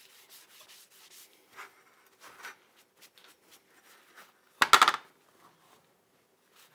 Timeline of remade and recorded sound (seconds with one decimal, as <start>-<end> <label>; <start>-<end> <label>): 0.0-6.7 recorded